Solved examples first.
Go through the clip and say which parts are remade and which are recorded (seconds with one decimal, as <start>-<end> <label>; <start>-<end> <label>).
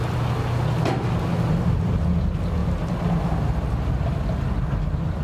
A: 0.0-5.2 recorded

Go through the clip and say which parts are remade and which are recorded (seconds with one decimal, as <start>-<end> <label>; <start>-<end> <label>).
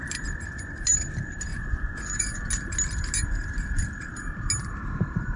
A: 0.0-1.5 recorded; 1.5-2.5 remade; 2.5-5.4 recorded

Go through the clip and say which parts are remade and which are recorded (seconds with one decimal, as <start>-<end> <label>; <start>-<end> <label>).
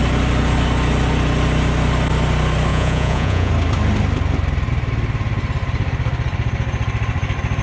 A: 0.0-2.7 recorded; 2.7-3.5 remade; 3.5-7.6 recorded